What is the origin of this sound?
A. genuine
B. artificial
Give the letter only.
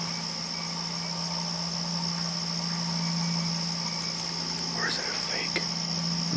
A